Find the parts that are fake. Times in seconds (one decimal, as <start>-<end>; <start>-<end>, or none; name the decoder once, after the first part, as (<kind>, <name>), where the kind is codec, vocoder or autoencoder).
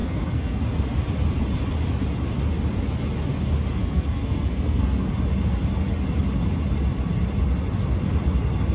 0.0-0.6 (codec, SNAC); 3.8-5.1